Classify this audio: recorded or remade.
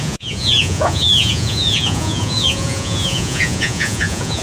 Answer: remade